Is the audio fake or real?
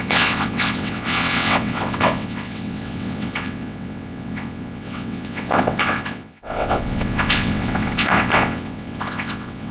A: fake